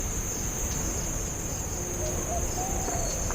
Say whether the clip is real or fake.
real